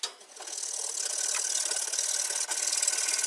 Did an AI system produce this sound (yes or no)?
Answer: no